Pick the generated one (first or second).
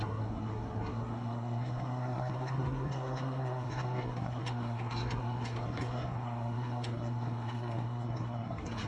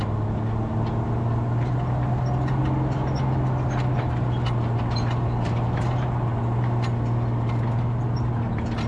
first